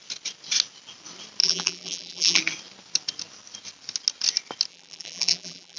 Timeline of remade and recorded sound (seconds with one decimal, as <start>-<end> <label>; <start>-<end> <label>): 0.0-1.4 recorded; 1.4-2.4 remade; 2.4-4.7 recorded; 4.7-5.8 remade